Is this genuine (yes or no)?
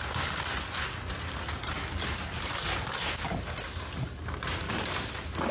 yes